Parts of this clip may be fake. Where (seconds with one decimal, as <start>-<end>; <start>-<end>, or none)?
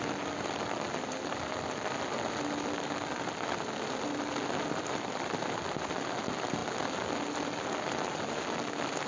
none